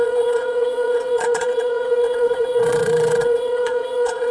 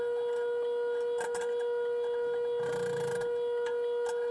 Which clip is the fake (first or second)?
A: first